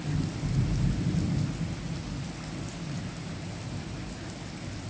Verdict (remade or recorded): recorded